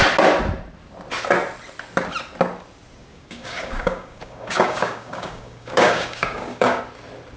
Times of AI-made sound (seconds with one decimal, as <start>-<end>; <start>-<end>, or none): 3.1-6.8